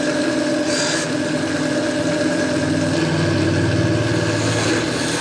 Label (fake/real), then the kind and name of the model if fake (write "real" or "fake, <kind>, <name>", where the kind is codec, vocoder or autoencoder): real